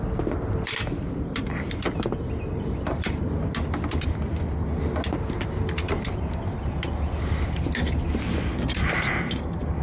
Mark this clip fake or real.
real